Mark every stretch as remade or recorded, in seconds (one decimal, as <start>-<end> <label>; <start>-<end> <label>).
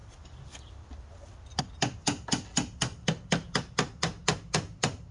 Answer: 0.0-5.1 recorded